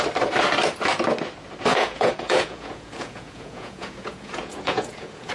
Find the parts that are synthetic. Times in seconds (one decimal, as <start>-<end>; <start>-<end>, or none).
1.7-5.3